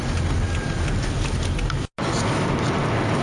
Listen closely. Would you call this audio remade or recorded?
recorded